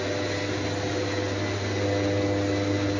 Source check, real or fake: real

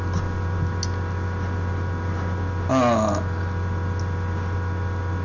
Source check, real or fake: real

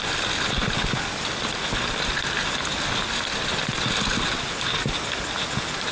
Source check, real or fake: real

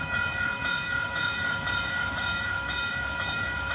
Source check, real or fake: fake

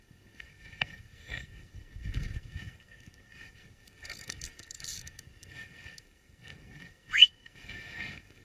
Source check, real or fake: fake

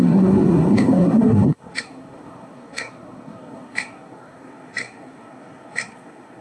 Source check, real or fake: fake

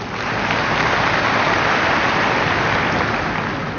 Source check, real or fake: real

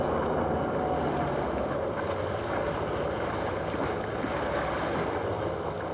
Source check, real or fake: real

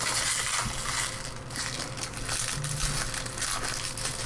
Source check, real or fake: real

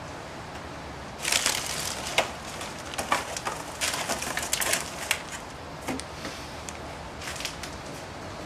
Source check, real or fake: real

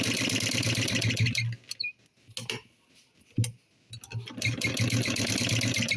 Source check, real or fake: real